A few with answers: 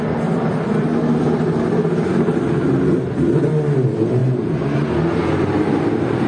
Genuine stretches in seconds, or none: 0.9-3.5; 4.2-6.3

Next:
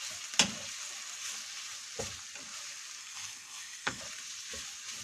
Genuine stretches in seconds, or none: 0.0-3.0; 4.0-5.0

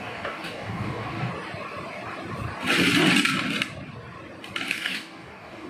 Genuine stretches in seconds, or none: 1.3-4.7

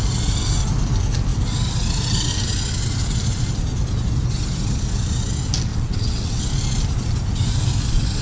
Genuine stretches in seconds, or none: 0.0-5.7; 6.4-8.2